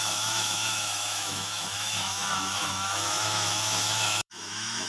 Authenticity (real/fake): fake